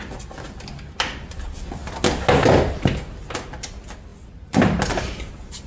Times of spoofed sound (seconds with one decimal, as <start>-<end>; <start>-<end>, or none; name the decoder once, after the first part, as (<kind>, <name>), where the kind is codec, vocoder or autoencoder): none